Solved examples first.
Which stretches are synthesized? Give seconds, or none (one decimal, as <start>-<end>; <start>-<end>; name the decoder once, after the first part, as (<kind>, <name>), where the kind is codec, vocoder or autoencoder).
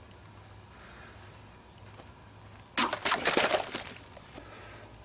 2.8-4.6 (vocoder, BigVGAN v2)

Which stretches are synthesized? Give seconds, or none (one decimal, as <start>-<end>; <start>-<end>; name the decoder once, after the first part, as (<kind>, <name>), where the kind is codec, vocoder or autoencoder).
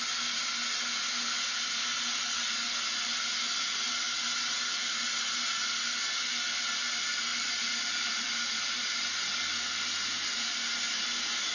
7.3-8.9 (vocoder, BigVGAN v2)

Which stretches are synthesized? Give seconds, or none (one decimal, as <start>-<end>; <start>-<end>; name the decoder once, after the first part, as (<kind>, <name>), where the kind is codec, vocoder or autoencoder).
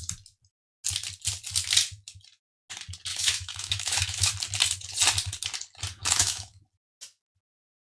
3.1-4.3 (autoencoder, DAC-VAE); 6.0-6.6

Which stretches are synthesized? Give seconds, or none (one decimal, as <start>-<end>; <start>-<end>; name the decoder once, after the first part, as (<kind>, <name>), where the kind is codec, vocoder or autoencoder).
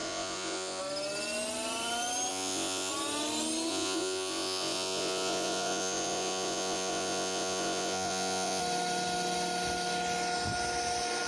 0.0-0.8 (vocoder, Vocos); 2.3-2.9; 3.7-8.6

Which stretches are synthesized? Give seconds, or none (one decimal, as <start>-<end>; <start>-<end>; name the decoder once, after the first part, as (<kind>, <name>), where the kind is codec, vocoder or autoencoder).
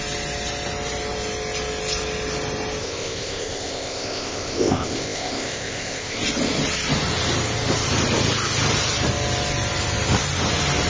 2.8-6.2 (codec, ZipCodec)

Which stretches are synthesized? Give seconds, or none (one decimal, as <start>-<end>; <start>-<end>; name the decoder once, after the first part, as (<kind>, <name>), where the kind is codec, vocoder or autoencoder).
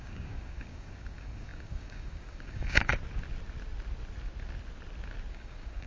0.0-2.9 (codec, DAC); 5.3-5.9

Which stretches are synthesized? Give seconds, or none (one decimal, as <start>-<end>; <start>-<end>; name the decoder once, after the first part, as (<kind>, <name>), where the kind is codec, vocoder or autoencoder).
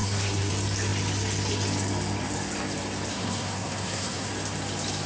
0.0-0.5 (codec, SNAC); 3.1-4.3